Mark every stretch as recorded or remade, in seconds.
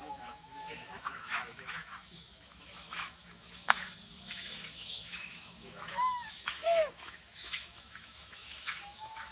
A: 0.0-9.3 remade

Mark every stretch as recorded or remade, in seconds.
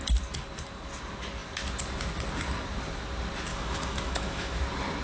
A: 0.0-3.5 recorded; 3.5-4.6 remade; 4.6-5.0 recorded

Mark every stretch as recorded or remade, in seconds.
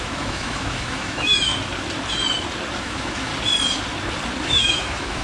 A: 0.0-1.5 remade; 1.5-2.8 recorded; 2.8-3.3 remade; 3.3-4.4 recorded; 4.4-5.2 remade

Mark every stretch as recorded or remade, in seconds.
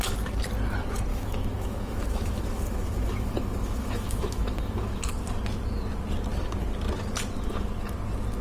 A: 0.0-1.1 recorded; 1.1-5.1 remade; 5.1-8.4 recorded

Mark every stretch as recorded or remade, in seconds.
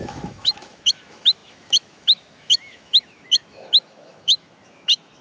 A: 0.0-5.2 remade